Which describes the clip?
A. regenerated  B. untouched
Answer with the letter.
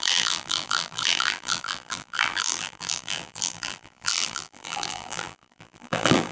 A